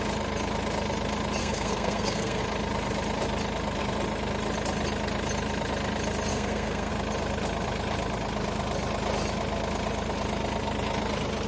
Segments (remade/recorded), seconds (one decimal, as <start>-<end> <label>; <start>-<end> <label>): 0.0-1.4 recorded; 1.4-2.4 remade; 2.4-6.3 recorded; 6.3-6.9 remade; 6.9-11.5 recorded